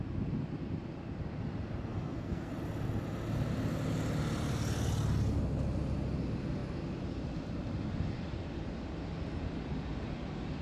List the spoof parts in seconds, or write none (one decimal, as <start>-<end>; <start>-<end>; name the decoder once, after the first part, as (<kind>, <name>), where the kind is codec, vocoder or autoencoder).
1.9-2.5 (codec, SNAC)